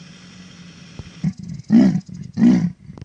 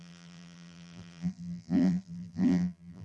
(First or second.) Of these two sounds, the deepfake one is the second